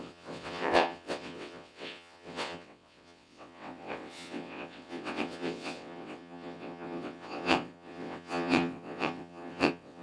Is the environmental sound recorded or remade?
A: remade